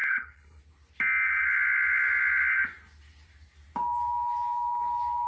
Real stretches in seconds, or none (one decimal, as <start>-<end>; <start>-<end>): 0.6-5.3